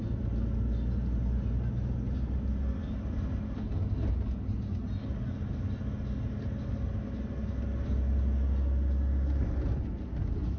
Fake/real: real